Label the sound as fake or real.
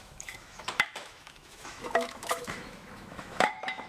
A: fake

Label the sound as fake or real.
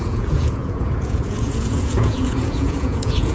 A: fake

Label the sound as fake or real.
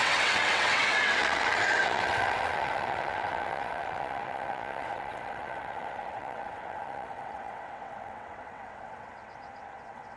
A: fake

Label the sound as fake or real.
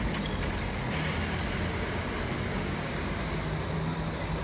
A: real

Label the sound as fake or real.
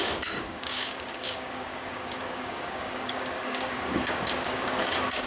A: fake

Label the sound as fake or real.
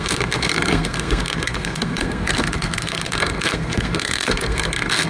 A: fake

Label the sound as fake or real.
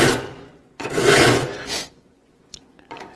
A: fake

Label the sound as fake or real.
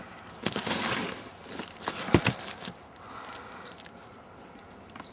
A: real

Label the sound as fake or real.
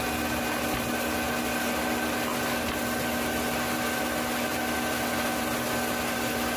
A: real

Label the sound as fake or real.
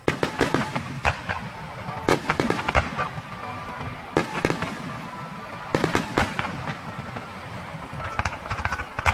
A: real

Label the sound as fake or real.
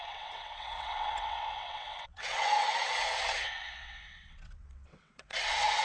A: fake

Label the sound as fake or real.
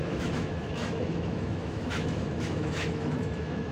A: fake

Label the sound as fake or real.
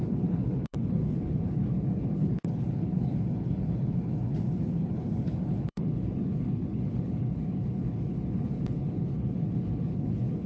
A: fake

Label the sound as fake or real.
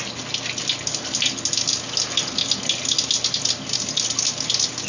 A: real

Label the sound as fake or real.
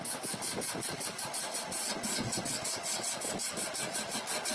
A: real